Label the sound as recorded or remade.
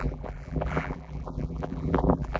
remade